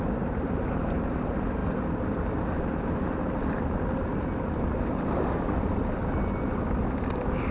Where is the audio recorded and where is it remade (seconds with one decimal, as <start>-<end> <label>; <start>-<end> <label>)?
0.0-7.5 recorded